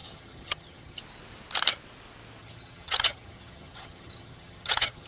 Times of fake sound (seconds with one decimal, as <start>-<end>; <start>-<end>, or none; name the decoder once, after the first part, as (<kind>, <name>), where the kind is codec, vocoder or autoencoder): 0.0-1.0 (vocoder, HiFi-GAN); 2.4-5.1